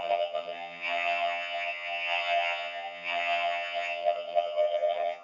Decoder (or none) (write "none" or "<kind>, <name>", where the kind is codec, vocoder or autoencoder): vocoder, HiFi-GAN